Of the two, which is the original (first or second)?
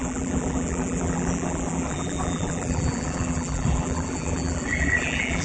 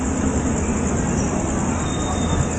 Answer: second